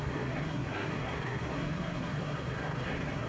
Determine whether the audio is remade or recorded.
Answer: remade